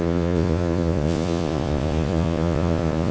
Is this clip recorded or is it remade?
remade